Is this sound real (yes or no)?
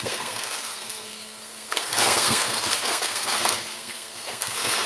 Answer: no